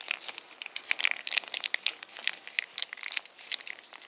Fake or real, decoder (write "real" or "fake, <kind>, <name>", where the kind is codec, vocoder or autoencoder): real